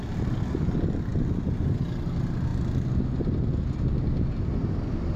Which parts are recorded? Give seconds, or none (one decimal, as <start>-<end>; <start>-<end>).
0.0-5.2